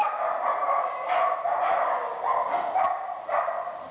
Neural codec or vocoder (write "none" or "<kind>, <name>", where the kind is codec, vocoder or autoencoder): none